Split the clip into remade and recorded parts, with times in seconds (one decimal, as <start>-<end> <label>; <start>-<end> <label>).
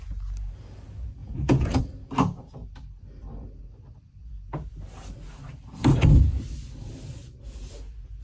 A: 0.0-1.2 recorded; 1.2-1.8 remade; 1.8-8.2 recorded